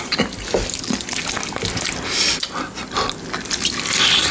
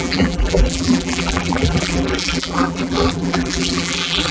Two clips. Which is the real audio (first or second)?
first